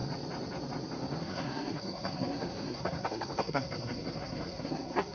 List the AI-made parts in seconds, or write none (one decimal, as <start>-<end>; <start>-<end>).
1.2-5.1